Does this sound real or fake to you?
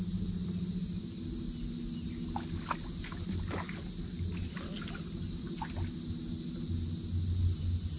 real